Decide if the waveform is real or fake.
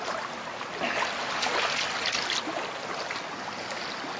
real